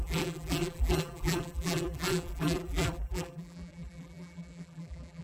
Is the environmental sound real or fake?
fake